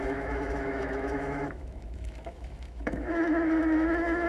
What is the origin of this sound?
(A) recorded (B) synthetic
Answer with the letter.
B